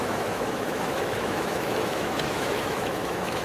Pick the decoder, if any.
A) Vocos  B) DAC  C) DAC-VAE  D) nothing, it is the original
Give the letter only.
C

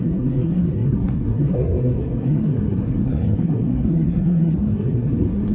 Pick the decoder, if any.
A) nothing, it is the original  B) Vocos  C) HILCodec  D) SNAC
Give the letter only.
D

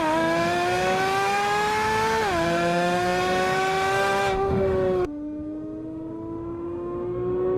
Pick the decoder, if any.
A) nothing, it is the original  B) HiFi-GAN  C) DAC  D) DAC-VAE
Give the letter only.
D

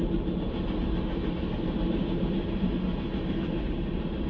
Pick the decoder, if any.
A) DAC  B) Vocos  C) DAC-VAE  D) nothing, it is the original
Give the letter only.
D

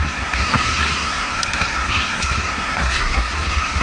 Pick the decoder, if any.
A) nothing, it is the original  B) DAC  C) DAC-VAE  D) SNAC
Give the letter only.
D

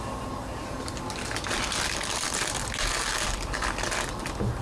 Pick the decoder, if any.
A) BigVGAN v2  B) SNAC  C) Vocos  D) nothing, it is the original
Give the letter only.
D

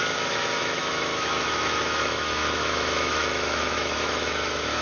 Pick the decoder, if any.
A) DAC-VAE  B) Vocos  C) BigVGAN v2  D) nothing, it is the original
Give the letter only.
A